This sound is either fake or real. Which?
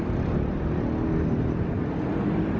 real